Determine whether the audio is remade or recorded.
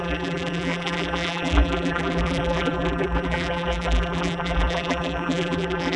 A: remade